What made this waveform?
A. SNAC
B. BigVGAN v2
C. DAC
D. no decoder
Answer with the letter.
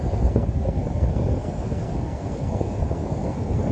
A